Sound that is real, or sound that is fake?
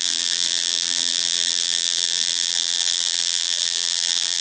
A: fake